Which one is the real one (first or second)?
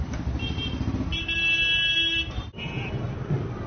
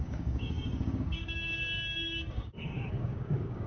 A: first